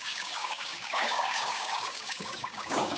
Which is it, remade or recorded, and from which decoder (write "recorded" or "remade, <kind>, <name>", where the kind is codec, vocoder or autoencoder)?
remade, codec, DAC